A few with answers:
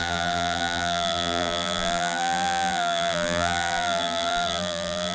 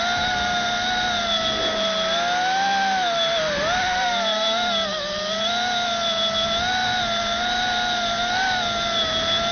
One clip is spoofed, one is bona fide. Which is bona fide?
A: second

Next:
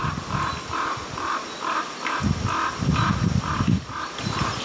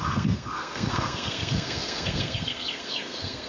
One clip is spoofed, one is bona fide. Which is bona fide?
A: first